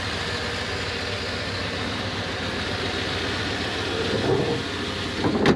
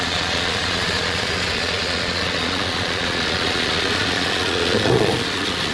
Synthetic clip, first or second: second